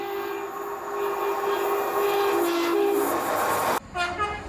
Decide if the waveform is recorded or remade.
recorded